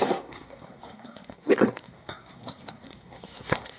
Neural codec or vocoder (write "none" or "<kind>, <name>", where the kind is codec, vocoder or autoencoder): codec, SNAC